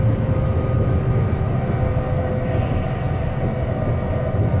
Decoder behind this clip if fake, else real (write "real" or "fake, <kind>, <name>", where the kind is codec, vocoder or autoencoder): real